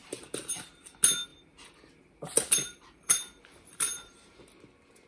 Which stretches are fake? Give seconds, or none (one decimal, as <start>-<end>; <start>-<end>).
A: 0.0-0.7; 1.3-4.4